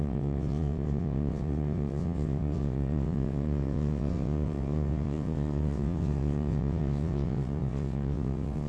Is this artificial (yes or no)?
yes